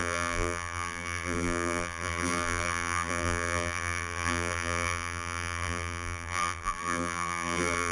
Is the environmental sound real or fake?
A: fake